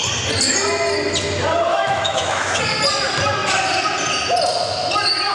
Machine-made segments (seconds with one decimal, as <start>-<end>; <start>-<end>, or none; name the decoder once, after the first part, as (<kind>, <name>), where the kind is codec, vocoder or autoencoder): 1.7-2.6 (autoencoder, DAC-VAE)